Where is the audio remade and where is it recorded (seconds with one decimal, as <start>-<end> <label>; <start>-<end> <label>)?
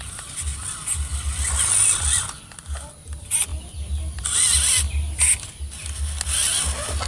0.0-7.1 recorded